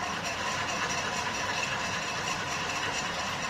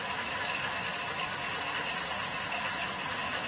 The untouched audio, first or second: second